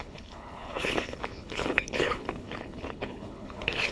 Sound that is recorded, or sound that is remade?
remade